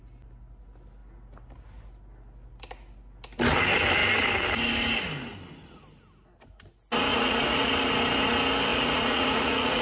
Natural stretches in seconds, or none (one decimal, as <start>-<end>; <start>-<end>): 0.0-7.1; 7.7-8.7